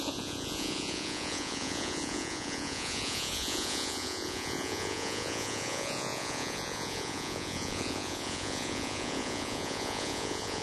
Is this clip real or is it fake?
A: fake